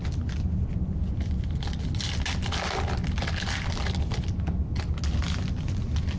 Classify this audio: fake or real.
real